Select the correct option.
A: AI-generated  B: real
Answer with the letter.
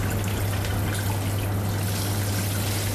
B